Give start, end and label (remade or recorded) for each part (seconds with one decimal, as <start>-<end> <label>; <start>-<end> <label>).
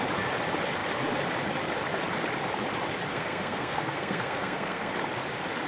0.0-3.1 recorded; 3.1-4.9 remade; 4.9-5.7 recorded